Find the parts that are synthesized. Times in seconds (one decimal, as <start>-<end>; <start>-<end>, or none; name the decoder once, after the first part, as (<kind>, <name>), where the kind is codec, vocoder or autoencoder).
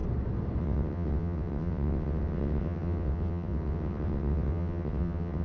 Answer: 0.6-5.4 (vocoder, WaveNeXt)